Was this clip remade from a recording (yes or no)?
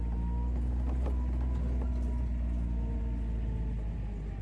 no